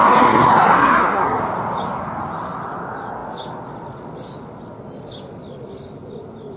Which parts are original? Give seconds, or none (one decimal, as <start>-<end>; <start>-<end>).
1.4-6.6